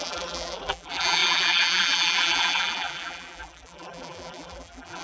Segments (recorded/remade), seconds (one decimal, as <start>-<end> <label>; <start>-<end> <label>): 0.0-5.0 remade

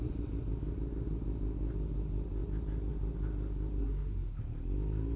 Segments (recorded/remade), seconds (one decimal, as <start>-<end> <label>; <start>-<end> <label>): 0.0-3.8 recorded; 3.8-4.4 remade; 4.4-5.2 recorded

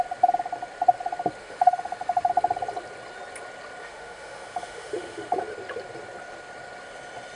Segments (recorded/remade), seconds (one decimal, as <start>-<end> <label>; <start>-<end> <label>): 0.0-1.4 recorded; 1.4-2.3 remade; 2.3-3.8 recorded; 3.8-5.4 remade; 5.4-7.4 recorded

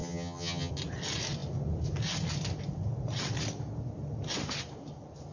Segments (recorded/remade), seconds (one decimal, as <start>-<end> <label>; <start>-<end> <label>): 0.0-0.7 remade; 0.7-5.3 recorded

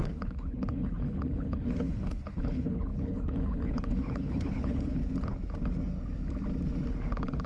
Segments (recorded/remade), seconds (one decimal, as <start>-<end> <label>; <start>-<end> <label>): 0.0-5.0 remade; 5.0-7.1 recorded; 7.1-7.5 remade

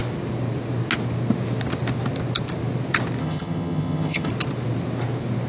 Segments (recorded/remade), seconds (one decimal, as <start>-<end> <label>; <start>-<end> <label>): 0.0-3.2 recorded; 3.2-4.3 remade; 4.3-5.5 recorded

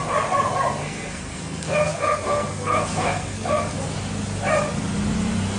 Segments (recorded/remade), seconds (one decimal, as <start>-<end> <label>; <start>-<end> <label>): 0.0-0.8 recorded; 0.8-3.7 remade; 3.7-5.6 recorded